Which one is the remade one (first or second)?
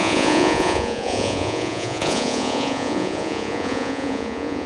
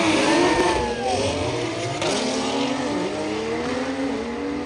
first